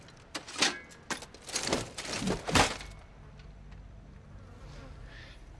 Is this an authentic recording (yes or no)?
yes